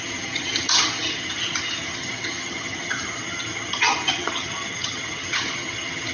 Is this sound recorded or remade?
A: remade